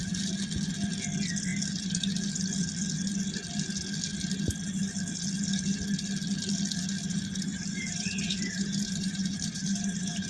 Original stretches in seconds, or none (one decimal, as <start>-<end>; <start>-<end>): 0.0-7.5